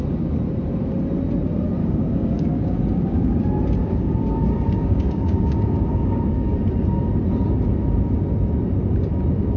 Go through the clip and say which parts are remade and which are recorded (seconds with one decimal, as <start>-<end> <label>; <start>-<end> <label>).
0.0-1.8 recorded; 1.8-3.4 remade; 3.4-3.8 recorded; 3.8-6.6 remade; 6.6-9.6 recorded